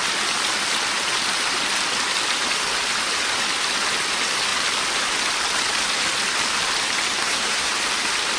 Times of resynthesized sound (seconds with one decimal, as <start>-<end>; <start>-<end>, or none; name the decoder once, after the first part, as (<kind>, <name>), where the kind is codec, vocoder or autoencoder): 7.2-7.7 (codec, SNAC)